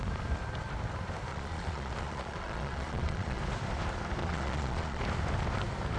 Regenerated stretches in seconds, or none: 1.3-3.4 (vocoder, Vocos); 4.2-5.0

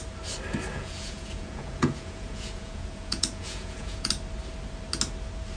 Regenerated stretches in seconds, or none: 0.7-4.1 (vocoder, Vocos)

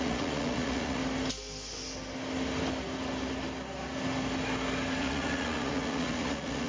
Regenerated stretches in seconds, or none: 0.0-1.0 (vocoder, Vocos); 5.0-6.7